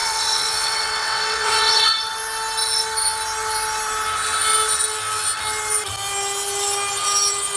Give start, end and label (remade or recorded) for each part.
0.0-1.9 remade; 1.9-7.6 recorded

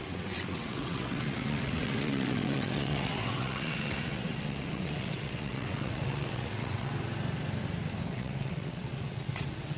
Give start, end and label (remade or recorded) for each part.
0.0-6.9 remade; 6.9-8.1 recorded; 8.1-9.8 remade